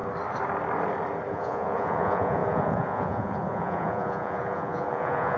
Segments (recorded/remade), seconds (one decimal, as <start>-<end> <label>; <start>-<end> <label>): 0.0-1.3 recorded; 1.3-5.4 remade